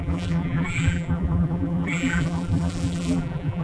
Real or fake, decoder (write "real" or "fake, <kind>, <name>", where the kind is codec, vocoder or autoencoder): fake, vocoder, BigVGAN v2